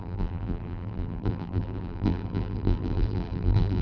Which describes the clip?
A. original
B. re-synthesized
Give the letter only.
B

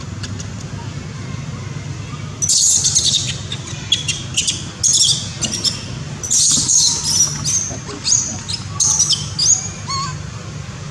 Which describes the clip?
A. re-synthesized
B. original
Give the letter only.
B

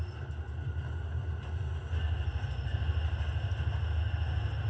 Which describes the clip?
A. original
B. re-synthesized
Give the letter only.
A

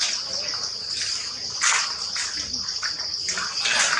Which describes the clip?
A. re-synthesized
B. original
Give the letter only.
B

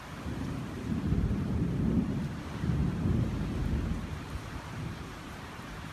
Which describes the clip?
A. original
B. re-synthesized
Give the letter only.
B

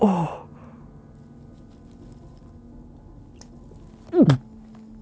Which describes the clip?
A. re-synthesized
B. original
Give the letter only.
B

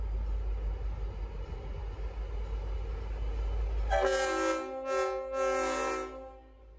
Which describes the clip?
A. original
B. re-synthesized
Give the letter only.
A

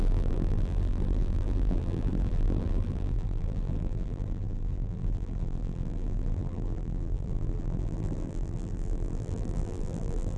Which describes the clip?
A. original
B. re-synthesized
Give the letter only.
B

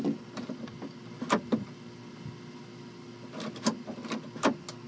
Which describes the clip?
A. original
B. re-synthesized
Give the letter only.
A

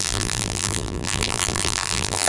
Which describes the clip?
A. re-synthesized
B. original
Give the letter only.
A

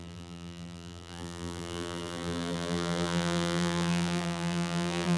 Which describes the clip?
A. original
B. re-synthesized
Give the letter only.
B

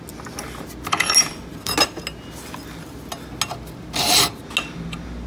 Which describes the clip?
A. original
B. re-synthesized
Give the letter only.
A